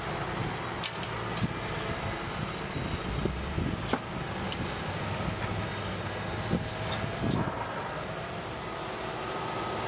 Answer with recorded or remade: recorded